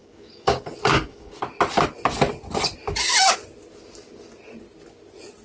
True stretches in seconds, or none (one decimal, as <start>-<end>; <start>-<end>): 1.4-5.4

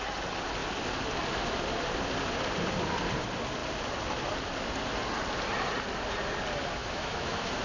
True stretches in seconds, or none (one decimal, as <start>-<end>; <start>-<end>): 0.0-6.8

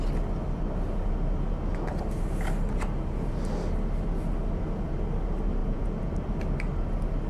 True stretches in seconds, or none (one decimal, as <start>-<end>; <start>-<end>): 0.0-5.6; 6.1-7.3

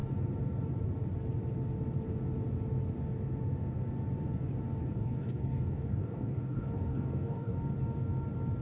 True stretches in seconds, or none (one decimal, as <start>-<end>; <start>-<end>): 0.0-4.9; 7.5-8.6